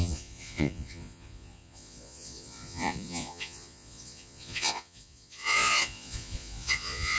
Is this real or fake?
fake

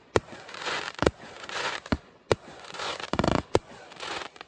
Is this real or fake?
fake